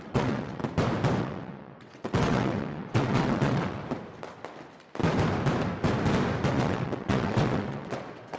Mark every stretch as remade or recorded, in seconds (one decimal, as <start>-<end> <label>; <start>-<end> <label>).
0.0-0.6 remade; 0.6-1.2 recorded; 1.2-3.8 remade; 3.8-6.5 recorded; 6.5-8.4 remade